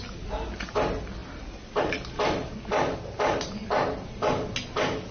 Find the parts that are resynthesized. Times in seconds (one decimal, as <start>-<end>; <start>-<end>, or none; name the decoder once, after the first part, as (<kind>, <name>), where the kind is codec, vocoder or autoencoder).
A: none